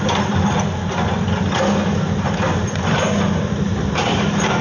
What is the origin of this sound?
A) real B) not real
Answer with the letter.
A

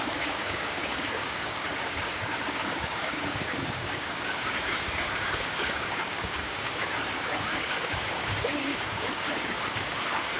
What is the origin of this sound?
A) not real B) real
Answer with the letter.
A